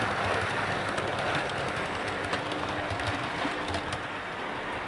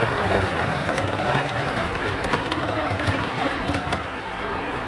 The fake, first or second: second